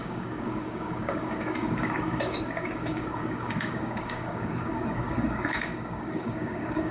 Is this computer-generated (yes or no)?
yes